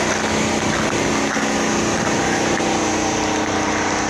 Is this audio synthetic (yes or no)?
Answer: no